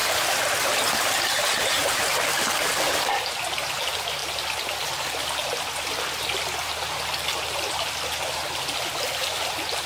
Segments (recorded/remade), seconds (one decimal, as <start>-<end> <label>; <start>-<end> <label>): 0.0-9.9 recorded